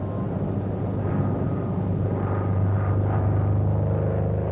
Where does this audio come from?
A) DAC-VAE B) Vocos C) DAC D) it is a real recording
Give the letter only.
D